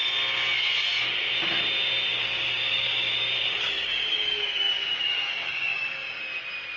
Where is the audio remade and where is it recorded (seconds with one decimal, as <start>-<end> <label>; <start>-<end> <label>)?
0.0-2.1 recorded; 2.1-6.2 remade; 6.2-6.8 recorded

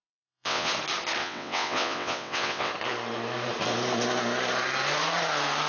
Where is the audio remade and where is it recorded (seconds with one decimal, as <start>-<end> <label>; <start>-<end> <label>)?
0.0-0.7 remade; 0.7-1.2 recorded; 1.2-2.7 remade; 2.7-5.7 recorded

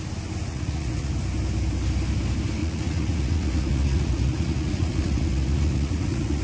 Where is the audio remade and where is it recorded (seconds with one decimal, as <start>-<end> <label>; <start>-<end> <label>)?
0.0-0.5 recorded; 0.5-1.1 remade; 1.1-2.6 recorded; 2.6-6.4 remade

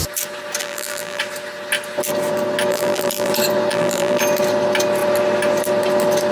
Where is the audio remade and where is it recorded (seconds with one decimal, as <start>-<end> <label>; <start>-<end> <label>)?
0.0-0.6 recorded; 0.6-1.2 remade; 1.2-2.7 recorded; 2.7-3.3 remade; 3.3-3.7 recorded; 3.7-4.2 remade; 4.2-6.3 recorded

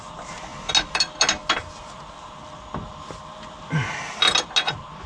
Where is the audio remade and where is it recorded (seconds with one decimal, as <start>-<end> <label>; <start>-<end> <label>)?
0.0-5.1 recorded

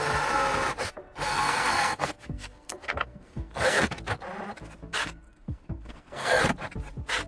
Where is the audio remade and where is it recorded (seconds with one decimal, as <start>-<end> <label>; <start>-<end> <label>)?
0.0-1.3 recorded; 1.3-4.0 remade; 4.0-4.9 recorded; 4.9-6.4 remade; 6.4-7.3 recorded